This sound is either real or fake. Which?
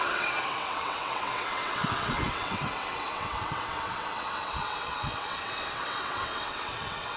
fake